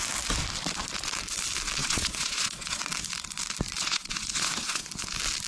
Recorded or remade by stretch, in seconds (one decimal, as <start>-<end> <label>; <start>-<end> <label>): 0.0-1.8 recorded; 1.8-2.8 remade; 2.8-3.8 recorded; 3.8-4.9 remade; 4.9-5.5 recorded